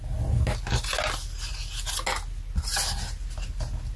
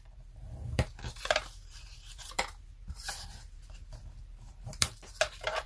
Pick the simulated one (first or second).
second